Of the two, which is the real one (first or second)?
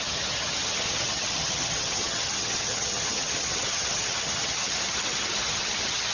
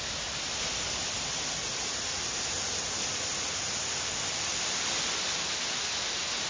second